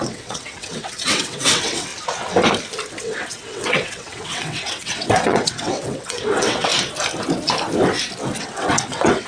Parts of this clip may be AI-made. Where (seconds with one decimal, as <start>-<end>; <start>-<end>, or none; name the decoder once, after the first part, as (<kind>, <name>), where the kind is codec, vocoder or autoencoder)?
0.0-1.9 (vocoder, WaveNeXt); 3.0-6.7; 8.4-9.3